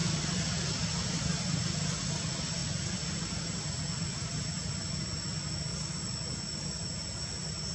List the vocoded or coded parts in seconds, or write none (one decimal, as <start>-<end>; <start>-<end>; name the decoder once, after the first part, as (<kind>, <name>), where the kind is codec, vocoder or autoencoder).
none

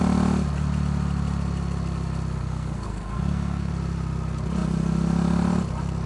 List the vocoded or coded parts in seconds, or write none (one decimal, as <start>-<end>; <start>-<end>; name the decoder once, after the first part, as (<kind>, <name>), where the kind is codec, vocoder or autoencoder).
2.4-3.7 (codec, SNAC)

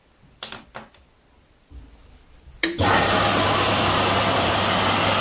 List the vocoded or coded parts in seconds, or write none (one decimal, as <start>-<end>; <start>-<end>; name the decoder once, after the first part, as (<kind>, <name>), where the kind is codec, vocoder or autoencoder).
2.0-4.5 (vocoder, BigVGAN v2)

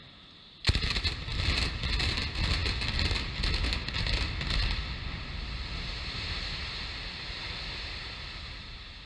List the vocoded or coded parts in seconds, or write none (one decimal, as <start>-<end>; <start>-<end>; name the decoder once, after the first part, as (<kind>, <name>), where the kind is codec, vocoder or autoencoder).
none

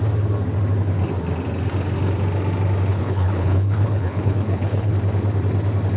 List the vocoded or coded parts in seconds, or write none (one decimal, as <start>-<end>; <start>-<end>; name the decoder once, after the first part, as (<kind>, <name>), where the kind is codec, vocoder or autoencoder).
2.9-4.9 (codec, HILCodec)

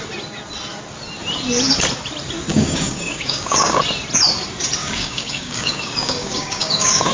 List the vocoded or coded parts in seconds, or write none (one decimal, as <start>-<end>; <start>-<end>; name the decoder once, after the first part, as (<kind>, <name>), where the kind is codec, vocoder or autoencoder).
2.5-3.8 (codec, DAC); 4.8-7.1